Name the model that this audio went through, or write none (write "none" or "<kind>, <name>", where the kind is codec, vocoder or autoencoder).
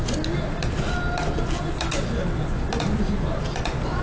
none